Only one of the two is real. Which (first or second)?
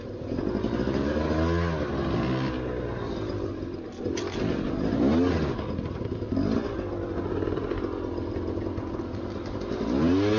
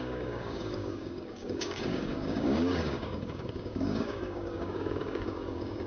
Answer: first